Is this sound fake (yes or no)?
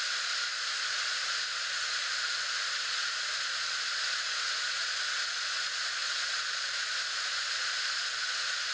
yes